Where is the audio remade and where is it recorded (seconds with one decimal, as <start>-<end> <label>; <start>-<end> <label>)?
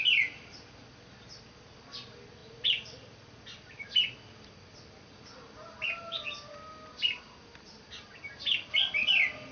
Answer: 0.0-9.5 recorded